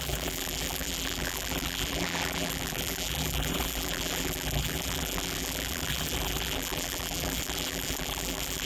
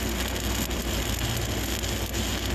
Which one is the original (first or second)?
second